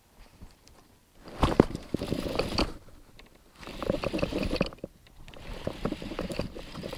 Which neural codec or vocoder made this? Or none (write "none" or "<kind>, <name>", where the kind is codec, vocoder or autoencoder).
vocoder, BigVGAN v2